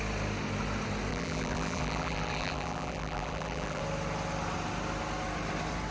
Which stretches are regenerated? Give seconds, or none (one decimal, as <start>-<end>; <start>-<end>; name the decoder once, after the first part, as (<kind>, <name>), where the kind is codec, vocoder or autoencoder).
1.1-3.8 (vocoder, BigVGAN v2)